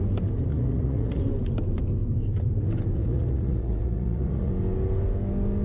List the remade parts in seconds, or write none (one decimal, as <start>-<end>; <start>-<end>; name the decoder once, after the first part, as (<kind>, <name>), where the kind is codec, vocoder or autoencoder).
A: 0.5-1.2 (vocoder, Vocos); 3.0-4.5